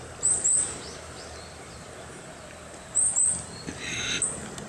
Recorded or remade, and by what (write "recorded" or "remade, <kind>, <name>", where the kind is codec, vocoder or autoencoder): recorded